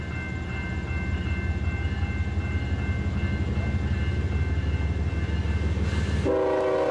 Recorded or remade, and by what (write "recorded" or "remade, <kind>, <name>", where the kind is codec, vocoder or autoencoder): recorded